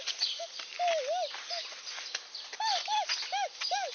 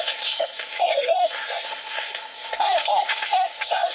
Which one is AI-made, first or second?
second